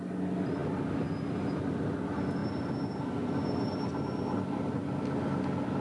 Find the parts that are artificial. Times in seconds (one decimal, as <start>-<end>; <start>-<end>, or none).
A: none